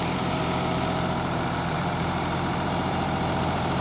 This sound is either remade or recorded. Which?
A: remade